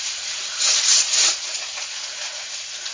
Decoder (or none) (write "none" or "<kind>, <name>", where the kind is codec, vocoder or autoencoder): vocoder, Vocos